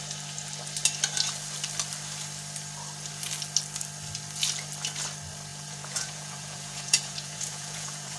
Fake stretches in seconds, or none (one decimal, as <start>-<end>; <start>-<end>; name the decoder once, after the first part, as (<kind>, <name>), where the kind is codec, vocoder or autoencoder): 5.5-8.2 (vocoder, Vocos)